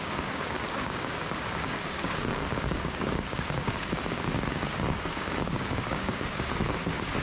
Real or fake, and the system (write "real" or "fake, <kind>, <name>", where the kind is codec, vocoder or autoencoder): fake, codec, DAC